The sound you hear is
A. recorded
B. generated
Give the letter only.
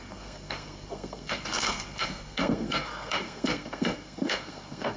B